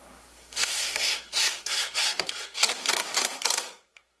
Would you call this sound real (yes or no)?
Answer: no